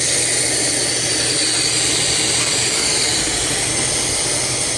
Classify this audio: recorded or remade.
recorded